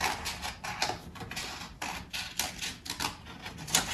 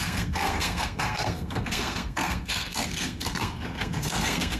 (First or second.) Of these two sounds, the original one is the first